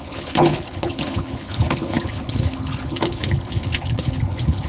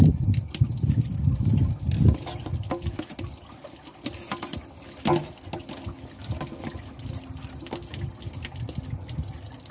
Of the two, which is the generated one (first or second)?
first